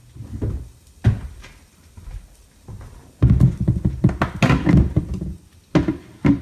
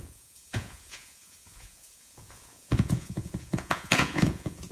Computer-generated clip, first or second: second